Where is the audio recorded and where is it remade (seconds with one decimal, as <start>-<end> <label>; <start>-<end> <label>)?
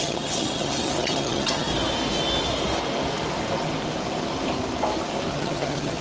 0.0-1.7 remade; 1.7-5.3 recorded; 5.3-6.0 remade